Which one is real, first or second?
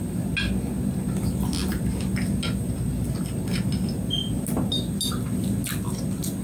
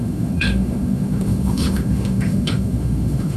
first